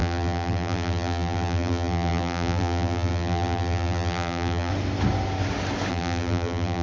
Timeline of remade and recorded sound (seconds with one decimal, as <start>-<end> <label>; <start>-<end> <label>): 0.0-4.7 remade; 4.7-5.9 recorded; 5.9-6.8 remade